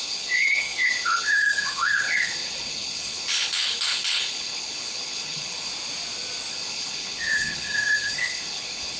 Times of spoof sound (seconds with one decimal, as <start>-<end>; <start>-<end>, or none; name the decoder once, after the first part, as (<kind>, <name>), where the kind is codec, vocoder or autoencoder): 0.0-5.7 (codec, HILCodec); 6.5-9.0